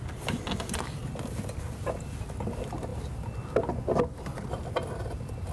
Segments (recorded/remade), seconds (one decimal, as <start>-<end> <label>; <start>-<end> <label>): 0.0-5.5 recorded